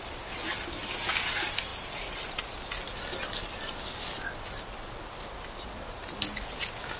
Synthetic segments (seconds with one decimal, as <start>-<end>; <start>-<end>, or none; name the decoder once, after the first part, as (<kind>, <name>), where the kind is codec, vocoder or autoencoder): none